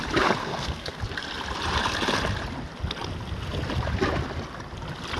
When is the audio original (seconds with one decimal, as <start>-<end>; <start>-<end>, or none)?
0.0-0.4; 1.0-5.2